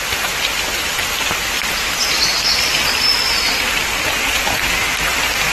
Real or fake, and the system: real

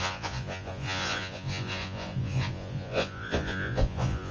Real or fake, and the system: fake, vocoder, Vocos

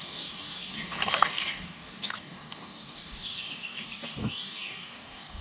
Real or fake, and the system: fake, codec, DAC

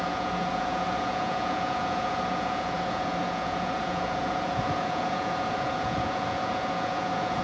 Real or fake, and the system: fake, vocoder, Vocos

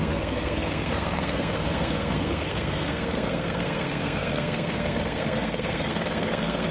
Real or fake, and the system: fake, codec, SNAC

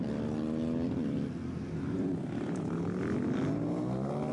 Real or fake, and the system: real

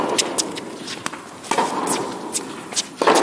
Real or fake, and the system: real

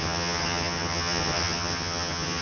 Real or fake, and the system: fake, vocoder, HiFi-GAN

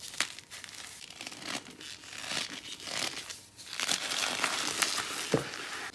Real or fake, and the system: real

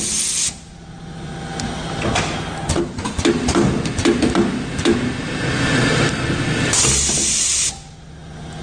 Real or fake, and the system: real